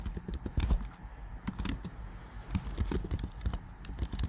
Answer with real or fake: real